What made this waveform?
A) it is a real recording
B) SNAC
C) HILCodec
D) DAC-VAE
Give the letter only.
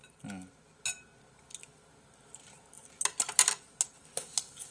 A